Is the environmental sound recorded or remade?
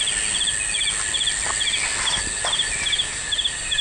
recorded